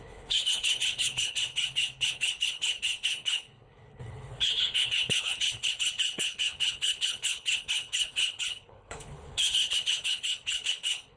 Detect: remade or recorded remade